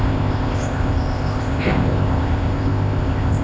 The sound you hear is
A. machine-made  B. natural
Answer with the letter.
A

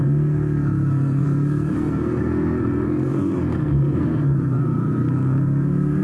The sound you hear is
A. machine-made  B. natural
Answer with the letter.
A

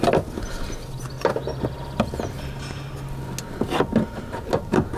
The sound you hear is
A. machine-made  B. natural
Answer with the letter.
B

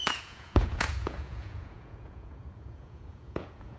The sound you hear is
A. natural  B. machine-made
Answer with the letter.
B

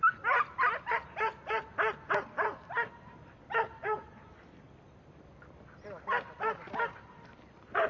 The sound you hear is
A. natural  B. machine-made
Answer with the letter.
A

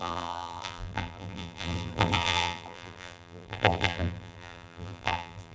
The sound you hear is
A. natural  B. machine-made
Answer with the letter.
B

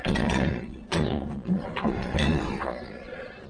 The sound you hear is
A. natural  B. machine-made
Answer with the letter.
B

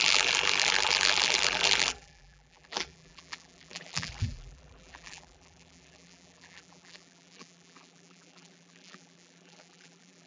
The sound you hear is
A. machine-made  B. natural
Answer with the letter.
A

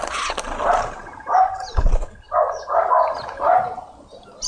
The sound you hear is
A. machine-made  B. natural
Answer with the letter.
B